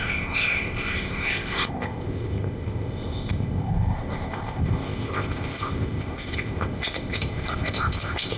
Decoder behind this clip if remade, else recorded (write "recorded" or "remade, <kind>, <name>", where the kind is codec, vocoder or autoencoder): remade, codec, ZipCodec